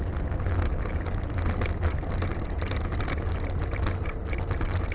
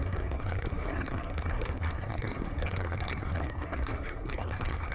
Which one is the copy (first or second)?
second